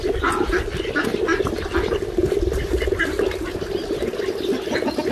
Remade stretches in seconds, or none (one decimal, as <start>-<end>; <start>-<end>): none